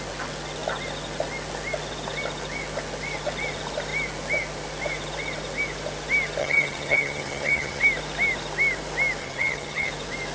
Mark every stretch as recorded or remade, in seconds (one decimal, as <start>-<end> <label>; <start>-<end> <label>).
0.0-6.4 recorded; 6.4-7.8 remade; 7.8-9.2 recorded; 9.2-9.9 remade; 9.9-10.3 recorded